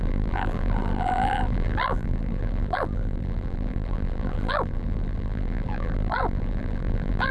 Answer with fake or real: fake